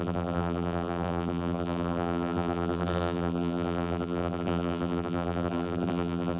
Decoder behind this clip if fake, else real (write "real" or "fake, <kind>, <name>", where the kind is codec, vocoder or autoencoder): fake, vocoder, BigVGAN v2